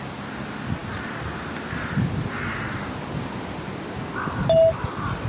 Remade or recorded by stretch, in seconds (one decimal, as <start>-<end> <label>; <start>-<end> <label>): 0.0-5.3 recorded